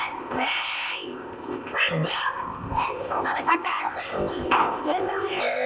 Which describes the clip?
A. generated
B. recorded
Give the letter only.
A